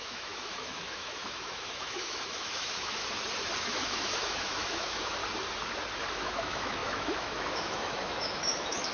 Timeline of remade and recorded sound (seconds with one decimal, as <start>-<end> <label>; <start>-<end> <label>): 0.0-3.0 remade; 3.0-3.6 recorded; 3.6-5.2 remade; 5.2-6.1 recorded; 6.1-8.9 remade